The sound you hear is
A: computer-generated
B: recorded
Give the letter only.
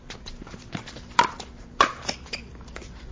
A